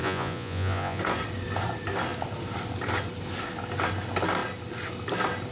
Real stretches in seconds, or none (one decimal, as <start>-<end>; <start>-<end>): 1.0-5.5